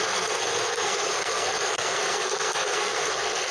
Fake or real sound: fake